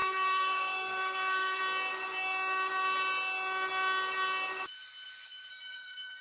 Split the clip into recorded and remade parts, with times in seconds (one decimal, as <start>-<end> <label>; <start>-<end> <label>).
0.0-1.6 remade; 1.6-5.5 recorded; 5.5-6.2 remade